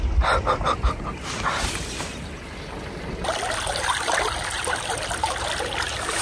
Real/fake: fake